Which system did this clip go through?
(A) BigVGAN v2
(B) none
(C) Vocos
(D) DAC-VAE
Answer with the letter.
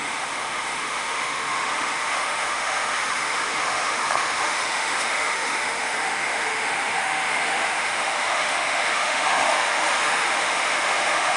D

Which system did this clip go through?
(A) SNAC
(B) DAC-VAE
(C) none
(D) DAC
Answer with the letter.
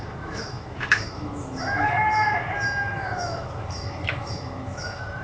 B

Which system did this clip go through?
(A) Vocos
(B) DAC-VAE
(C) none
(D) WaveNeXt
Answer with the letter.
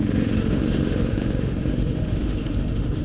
B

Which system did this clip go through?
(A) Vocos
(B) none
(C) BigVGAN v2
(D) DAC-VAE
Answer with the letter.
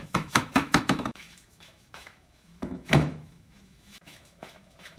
D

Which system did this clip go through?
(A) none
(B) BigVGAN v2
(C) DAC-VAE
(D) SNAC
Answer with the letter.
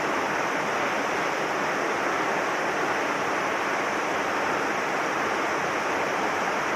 A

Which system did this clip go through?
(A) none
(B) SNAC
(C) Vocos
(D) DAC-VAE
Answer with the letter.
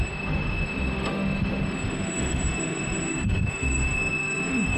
D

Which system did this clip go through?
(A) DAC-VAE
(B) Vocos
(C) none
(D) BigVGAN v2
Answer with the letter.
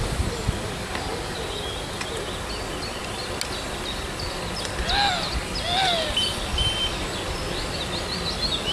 C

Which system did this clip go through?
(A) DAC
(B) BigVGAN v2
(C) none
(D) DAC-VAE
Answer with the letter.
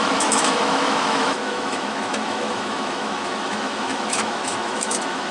D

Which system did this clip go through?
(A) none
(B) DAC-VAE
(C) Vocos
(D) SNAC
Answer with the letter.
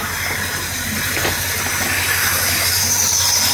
A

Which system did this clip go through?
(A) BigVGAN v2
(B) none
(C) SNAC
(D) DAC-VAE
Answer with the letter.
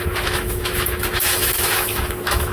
D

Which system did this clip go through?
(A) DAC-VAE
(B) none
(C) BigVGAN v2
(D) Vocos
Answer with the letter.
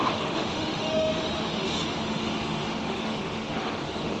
A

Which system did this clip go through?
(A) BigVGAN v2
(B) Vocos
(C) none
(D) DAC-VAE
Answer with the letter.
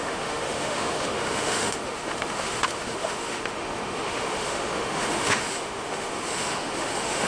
D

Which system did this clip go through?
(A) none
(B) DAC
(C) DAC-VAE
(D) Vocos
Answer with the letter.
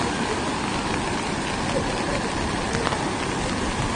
A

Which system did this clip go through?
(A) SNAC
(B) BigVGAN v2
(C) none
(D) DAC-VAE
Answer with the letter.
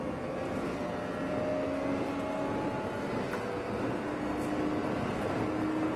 C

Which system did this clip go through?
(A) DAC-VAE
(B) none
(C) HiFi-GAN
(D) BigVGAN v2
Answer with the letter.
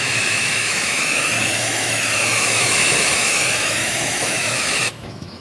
A